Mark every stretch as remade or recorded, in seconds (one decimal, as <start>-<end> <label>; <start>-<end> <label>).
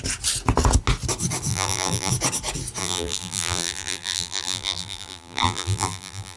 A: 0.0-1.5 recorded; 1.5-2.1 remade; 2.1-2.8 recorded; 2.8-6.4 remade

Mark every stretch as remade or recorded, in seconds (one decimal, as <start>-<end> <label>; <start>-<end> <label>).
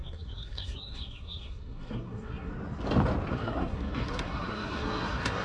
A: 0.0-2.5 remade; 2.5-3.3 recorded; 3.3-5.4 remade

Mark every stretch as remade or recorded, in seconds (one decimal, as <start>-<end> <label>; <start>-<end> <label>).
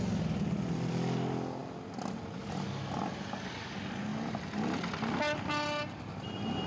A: 0.0-6.7 recorded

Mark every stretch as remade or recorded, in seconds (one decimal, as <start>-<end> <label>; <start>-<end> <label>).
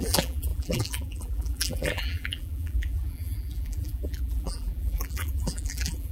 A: 0.0-6.1 remade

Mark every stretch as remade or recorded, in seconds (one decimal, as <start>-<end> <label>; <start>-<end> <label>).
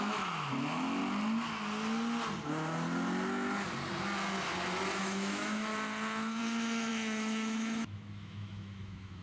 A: 0.0-1.0 remade; 1.0-5.0 recorded; 5.0-5.7 remade; 5.7-6.4 recorded; 6.4-9.2 remade